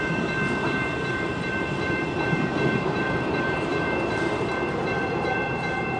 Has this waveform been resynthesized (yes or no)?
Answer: yes